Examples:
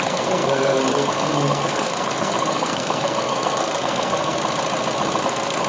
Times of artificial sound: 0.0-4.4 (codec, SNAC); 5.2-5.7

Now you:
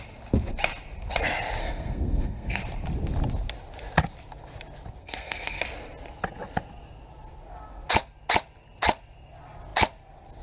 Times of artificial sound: 1.6-2.6 (codec, SNAC); 5.0-5.6

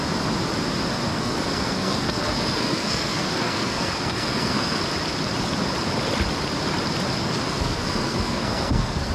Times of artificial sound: 1.1-4.8 (codec, SNAC); 7.2-9.1

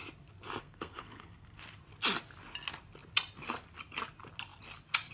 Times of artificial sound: 0.6-1.6 (codec, SNAC)

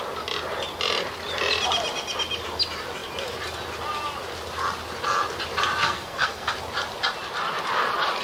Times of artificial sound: 5.8-6.5 (codec, SNAC)